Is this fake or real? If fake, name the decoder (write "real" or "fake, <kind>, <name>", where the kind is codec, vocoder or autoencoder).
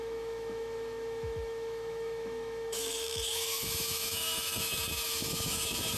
fake, autoencoder, DAC-VAE